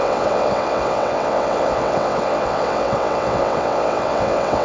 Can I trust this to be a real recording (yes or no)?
no